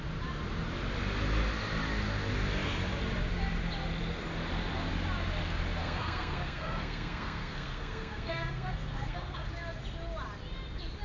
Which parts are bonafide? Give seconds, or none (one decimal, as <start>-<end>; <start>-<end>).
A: 0.0-5.8; 9.5-11.0